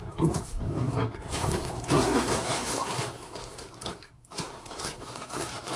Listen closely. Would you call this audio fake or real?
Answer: fake